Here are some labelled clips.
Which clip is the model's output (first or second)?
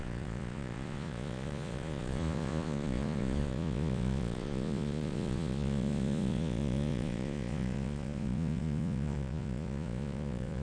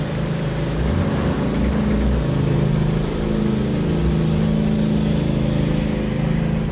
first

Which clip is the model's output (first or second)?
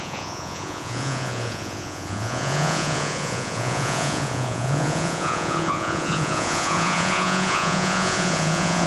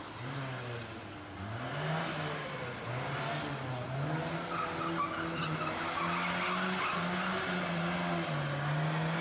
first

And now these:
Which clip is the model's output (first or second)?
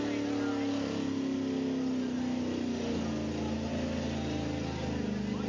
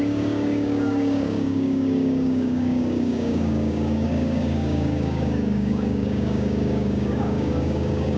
second